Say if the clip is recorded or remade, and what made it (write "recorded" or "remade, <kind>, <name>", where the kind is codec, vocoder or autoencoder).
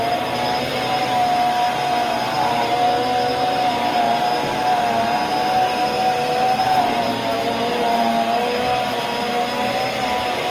recorded